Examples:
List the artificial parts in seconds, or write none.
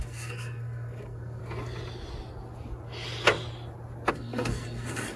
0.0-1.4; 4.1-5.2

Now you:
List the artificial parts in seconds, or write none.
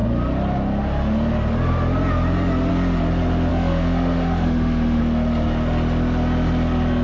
3.5-5.0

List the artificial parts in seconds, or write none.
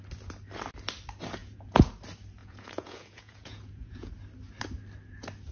1.4-1.9; 2.4-4.1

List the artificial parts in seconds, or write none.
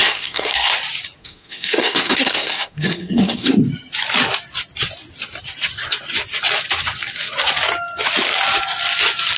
0.0-0.7; 1.2-3.6